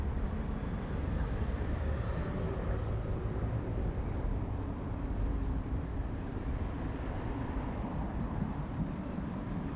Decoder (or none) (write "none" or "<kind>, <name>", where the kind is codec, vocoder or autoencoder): vocoder, BigVGAN v2